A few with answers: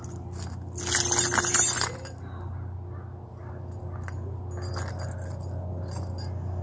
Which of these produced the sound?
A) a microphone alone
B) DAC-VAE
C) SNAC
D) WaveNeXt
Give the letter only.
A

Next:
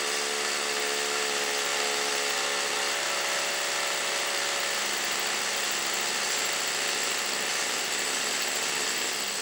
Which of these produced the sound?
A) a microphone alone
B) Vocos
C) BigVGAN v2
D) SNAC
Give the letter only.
A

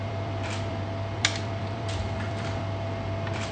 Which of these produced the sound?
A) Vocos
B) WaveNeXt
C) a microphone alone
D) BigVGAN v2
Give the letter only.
D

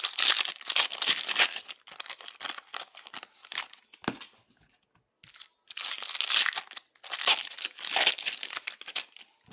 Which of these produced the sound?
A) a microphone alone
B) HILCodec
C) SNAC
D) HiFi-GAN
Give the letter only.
A